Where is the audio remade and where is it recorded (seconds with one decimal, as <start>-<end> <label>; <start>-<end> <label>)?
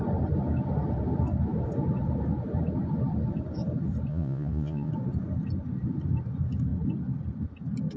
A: 0.0-4.1 recorded; 4.1-4.9 remade; 4.9-8.0 recorded